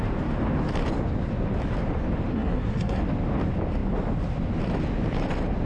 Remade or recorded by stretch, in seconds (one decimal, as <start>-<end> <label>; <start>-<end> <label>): 0.0-2.3 recorded; 2.3-3.0 remade; 3.0-5.7 recorded